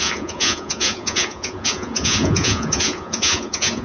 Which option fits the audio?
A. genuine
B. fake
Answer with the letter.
B